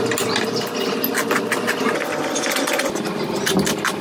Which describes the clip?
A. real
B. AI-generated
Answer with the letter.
A